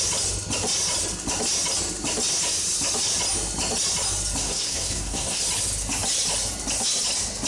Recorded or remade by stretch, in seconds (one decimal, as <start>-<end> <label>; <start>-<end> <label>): 0.0-4.4 recorded; 4.4-5.4 remade; 5.4-7.5 recorded